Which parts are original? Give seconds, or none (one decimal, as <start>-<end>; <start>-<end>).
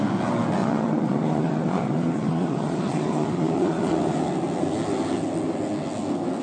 0.0-0.6; 3.9-6.4